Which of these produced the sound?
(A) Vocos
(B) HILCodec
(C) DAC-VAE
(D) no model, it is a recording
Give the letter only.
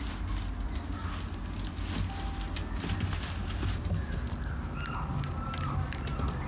D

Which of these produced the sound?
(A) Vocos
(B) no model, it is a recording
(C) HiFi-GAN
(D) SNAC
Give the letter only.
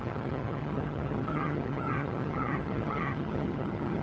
C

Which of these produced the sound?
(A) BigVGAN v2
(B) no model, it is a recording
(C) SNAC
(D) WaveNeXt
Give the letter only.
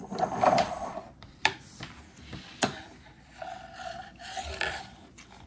A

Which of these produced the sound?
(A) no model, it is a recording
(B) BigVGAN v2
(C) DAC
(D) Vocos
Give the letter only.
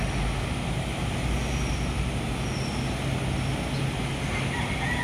A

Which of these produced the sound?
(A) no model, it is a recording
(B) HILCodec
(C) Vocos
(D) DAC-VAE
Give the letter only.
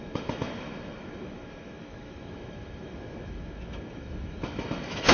D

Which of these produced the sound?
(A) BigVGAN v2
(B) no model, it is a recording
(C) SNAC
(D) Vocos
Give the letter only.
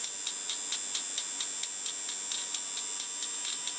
B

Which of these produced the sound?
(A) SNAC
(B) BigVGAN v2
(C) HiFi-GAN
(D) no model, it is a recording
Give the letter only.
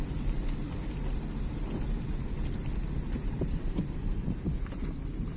D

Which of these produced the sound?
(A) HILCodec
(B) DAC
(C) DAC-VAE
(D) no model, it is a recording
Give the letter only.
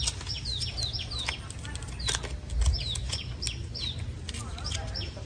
D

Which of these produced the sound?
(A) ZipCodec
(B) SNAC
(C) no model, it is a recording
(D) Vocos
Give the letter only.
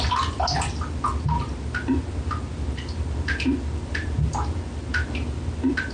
C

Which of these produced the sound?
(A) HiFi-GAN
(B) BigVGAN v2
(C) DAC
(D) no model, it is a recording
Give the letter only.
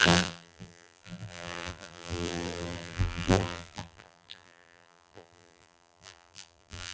B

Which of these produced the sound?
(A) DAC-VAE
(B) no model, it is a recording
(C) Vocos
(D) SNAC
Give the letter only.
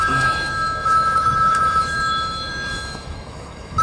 A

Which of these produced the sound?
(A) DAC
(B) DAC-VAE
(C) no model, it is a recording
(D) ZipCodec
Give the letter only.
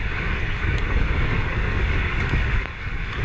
A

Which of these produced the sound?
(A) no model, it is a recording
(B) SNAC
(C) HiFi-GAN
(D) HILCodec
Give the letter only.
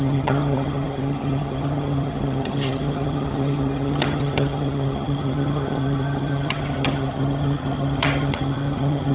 C